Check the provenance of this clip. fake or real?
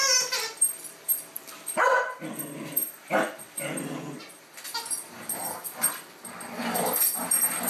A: fake